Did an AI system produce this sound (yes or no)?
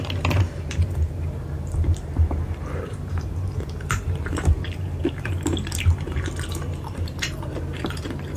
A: yes